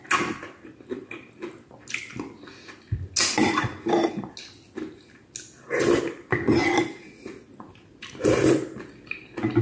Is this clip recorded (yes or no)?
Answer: yes